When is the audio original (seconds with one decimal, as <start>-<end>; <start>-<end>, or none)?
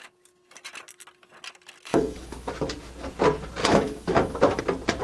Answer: 0.0-1.9; 2.5-3.6; 4.6-5.0